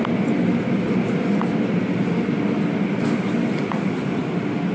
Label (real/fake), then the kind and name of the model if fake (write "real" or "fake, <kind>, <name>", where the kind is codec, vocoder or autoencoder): real